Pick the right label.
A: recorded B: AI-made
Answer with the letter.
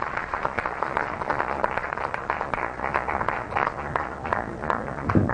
B